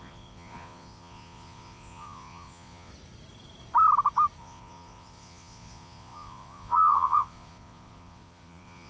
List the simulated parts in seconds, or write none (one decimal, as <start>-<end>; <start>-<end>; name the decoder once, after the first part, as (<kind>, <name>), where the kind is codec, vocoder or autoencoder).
0.0-2.9 (vocoder, Vocos); 4.4-8.9